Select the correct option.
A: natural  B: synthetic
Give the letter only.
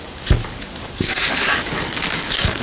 B